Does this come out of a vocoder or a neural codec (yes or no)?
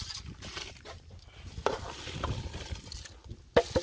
no